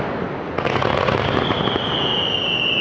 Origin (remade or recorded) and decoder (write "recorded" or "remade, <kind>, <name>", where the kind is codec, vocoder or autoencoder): recorded